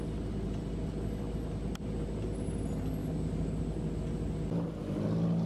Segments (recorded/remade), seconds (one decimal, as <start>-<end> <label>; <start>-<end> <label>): 0.0-3.0 recorded; 3.0-3.6 remade; 3.6-5.5 recorded